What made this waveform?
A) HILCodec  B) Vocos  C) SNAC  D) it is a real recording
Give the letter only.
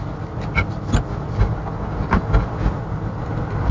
D